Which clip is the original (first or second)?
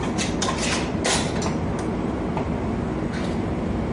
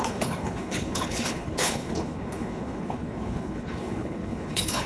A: first